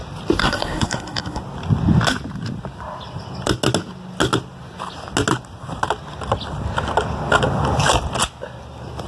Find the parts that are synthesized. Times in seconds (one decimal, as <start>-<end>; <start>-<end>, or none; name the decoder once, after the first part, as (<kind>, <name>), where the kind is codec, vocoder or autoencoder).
0.4-1.4 (codec, SNAC)